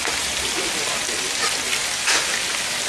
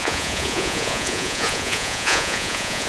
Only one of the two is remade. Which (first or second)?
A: second